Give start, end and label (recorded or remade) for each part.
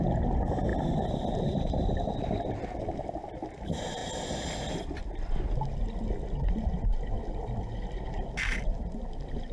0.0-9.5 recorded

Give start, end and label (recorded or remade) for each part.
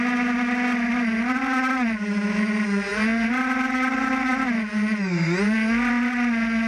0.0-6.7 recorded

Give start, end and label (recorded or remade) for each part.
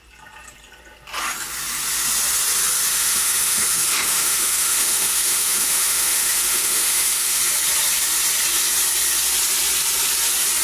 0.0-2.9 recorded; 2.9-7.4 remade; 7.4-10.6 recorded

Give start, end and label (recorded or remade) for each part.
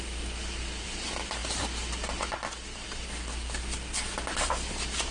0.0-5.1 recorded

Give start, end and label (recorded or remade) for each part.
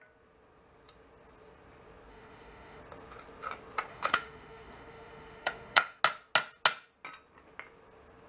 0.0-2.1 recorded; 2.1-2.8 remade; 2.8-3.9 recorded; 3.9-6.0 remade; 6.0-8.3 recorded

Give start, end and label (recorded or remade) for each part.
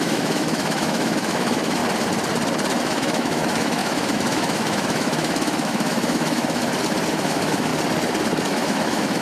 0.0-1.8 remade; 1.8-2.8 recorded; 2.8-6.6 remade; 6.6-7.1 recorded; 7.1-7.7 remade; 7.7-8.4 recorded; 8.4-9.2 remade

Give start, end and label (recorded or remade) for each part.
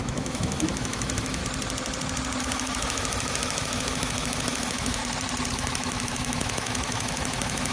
0.0-1.4 remade; 1.4-2.4 recorded; 2.4-5.0 remade; 5.0-5.5 recorded; 5.5-7.7 remade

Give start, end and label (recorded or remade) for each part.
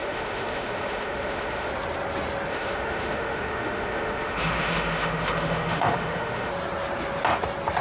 0.0-1.7 remade; 1.7-2.5 recorded; 2.5-6.5 remade; 6.5-7.8 recorded